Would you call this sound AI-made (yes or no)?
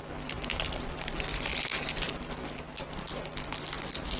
no